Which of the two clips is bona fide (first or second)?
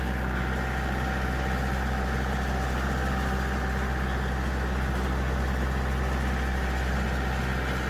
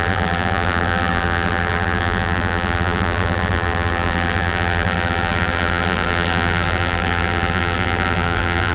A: first